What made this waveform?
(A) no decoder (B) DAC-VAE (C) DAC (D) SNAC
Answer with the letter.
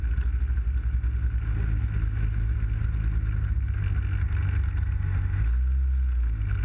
A